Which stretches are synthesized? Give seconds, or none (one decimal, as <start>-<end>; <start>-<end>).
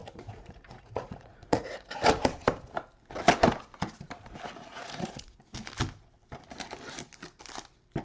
0.0-2.2; 4.7-5.5